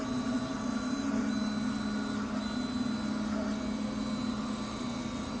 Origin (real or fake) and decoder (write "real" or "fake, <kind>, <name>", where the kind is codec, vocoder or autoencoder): real